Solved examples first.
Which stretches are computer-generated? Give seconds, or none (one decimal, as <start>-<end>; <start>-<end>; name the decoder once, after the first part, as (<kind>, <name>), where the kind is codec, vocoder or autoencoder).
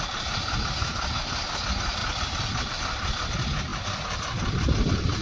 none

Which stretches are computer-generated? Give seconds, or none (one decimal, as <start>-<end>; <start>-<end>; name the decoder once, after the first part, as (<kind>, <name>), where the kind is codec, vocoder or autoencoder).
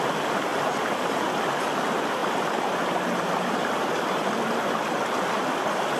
none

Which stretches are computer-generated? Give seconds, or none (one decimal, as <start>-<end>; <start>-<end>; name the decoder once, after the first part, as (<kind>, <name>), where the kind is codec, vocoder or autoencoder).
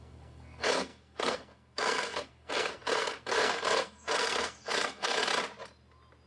0.0-5.3 (codec, SNAC)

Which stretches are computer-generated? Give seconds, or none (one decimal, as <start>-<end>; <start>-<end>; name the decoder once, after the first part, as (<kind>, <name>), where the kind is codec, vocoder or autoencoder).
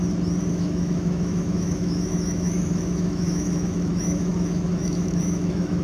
0.5-5.8 (autoencoder, DAC-VAE)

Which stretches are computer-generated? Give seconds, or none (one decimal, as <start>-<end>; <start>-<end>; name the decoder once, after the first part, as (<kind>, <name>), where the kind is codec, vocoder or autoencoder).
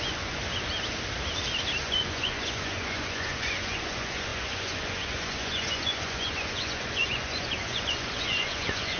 0.0-0.4 (vocoder, Vocos); 1.8-9.0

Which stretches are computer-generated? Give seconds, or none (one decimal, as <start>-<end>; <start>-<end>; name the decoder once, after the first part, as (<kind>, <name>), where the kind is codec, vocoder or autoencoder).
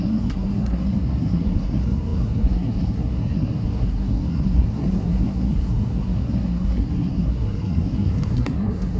0.0-9.0 (codec, SNAC)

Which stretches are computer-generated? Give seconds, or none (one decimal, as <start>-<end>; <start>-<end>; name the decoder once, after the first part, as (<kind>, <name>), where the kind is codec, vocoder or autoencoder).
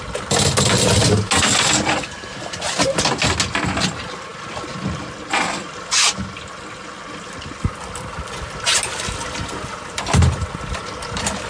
none